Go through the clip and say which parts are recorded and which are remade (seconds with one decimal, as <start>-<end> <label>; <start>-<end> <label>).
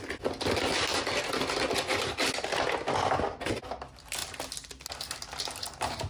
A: 0.0-6.1 recorded